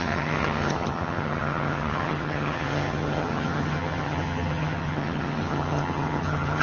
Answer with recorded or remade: remade